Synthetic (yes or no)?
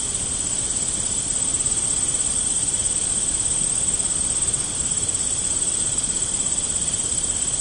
no